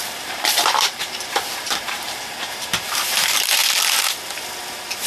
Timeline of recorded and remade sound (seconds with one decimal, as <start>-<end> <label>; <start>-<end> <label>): 0.0-3.6 remade; 3.6-5.1 recorded